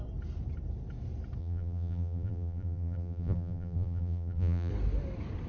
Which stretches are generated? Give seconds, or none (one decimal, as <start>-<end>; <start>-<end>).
1.4-4.7